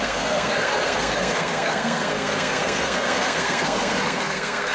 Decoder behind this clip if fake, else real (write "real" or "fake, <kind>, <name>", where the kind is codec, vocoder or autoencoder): fake, codec, SNAC